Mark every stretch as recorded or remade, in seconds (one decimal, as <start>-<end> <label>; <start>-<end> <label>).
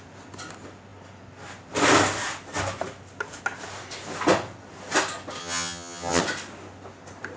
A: 0.0-5.4 recorded; 5.4-6.2 remade; 6.2-7.4 recorded